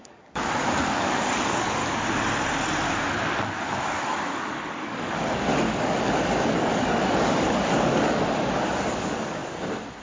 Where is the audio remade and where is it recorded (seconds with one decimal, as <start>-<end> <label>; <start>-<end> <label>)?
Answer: 0.0-1.8 remade; 1.8-3.8 recorded; 3.8-9.4 remade; 9.4-10.0 recorded

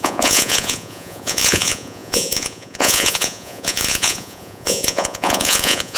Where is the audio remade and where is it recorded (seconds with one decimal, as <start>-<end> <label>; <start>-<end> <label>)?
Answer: 0.0-6.0 remade